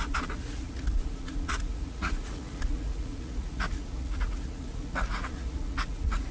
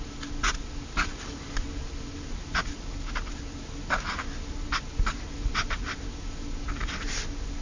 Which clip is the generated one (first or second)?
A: first